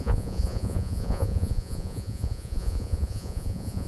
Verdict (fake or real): fake